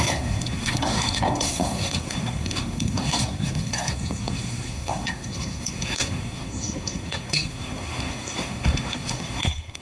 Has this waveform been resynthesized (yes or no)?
yes